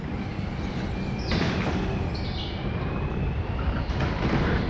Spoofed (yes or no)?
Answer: no